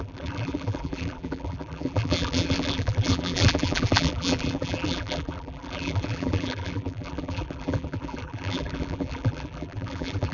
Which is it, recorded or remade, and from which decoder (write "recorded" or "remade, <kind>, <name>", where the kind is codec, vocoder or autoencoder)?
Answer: remade, vocoder, BigVGAN v2